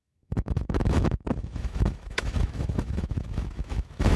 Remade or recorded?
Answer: remade